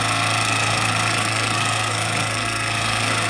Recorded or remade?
remade